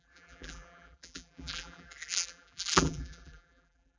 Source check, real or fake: fake